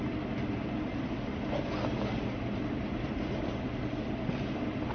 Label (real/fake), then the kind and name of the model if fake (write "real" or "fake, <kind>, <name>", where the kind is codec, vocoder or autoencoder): real